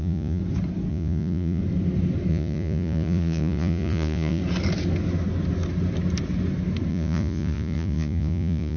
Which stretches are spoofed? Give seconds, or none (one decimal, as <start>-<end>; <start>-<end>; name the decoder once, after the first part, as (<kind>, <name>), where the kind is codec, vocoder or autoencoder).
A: 0.0-0.4 (vocoder, Vocos); 0.9-1.6; 2.3-4.4; 6.9-8.8